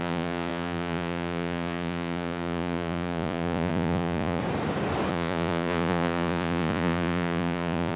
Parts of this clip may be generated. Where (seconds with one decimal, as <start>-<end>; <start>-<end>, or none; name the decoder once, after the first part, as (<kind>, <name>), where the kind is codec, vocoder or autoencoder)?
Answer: 0.0-4.4 (vocoder, Vocos); 5.1-8.0